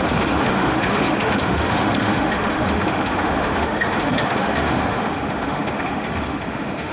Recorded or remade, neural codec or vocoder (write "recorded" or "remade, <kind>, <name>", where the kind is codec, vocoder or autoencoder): remade, autoencoder, DAC-VAE